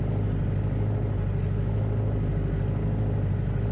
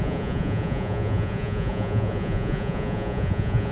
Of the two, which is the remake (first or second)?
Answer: second